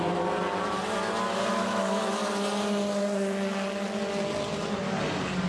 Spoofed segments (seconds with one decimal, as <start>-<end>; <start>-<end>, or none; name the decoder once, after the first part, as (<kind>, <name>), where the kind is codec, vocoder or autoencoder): 1.5-2.1 (autoencoder, DAC-VAE)